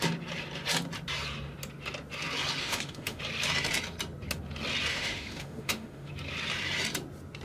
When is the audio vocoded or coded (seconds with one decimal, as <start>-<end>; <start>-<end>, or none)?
2.6-3.2; 4.9-6.1